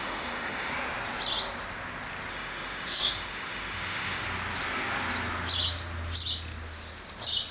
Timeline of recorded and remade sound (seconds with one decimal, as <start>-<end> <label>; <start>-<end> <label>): 0.0-0.7 remade; 0.7-2.3 recorded; 2.3-4.2 remade; 4.2-7.5 recorded